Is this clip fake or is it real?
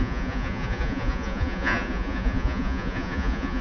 fake